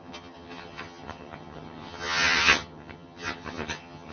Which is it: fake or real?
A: fake